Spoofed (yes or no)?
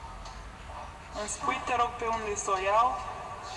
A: no